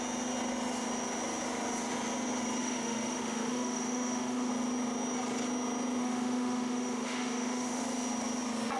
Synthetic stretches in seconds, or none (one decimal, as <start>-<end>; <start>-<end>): 2.6-4.5; 6.0-7.8